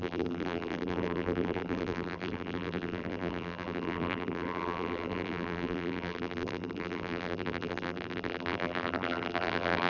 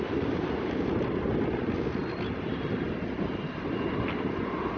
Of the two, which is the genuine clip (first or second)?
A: second